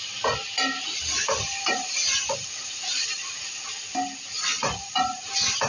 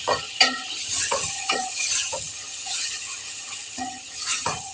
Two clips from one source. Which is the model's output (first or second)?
second